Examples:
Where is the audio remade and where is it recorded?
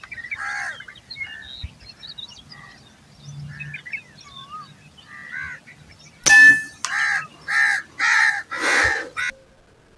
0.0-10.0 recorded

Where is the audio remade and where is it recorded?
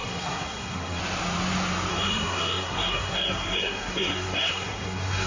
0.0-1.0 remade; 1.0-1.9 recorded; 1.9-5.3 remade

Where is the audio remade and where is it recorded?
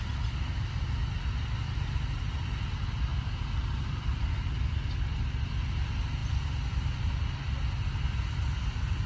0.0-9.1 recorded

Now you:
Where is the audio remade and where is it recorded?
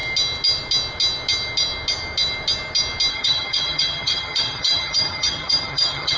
0.0-3.1 recorded; 3.1-6.2 remade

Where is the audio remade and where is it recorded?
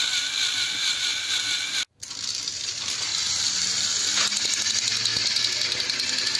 0.0-6.4 recorded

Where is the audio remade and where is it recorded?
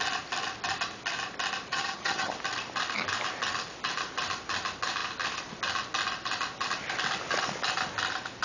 0.0-1.7 recorded; 1.7-2.3 remade; 2.3-8.4 recorded